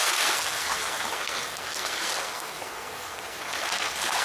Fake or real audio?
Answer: fake